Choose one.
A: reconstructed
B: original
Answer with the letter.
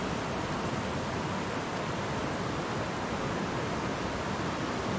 B